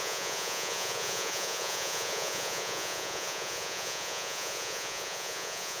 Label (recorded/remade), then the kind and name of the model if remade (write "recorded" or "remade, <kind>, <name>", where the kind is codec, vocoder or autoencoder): remade, vocoder, Vocos